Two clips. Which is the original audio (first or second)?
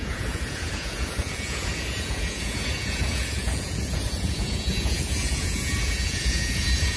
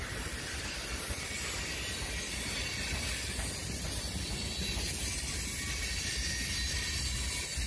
second